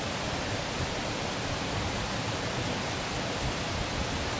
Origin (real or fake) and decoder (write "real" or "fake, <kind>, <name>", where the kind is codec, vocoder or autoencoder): real